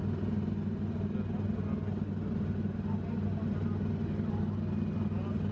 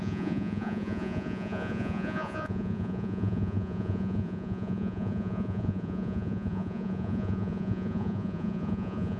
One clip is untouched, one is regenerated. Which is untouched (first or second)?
first